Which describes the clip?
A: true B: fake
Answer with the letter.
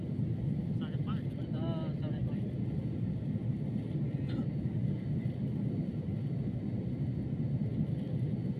A